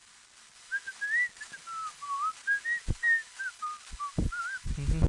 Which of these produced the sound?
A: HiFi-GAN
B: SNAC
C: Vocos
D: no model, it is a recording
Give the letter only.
D